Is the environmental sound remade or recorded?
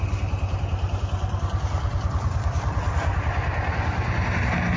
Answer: recorded